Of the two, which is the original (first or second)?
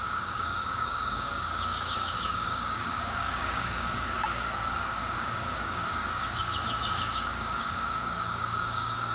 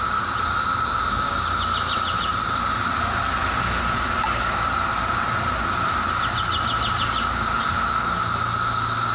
second